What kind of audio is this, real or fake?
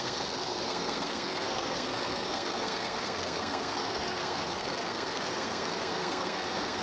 fake